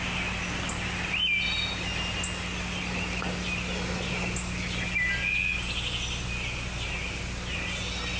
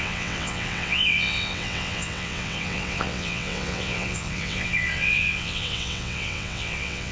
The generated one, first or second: second